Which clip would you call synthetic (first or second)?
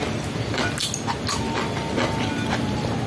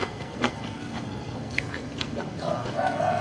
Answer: second